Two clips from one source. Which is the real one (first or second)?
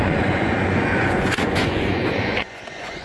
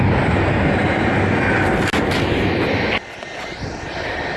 second